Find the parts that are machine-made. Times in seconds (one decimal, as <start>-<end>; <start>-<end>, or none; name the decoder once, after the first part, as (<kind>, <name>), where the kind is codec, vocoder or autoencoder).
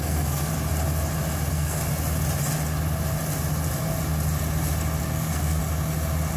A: 0.0-0.5 (codec, SNAC); 1.5-1.9; 5.0-5.6